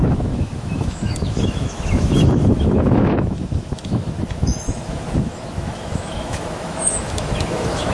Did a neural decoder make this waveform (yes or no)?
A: yes